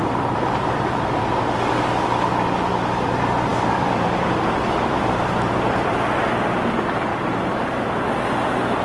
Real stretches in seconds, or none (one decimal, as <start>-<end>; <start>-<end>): 1.2-3.5; 5.9-7.1; 7.8-8.8